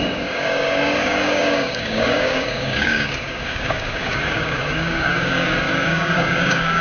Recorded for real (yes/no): no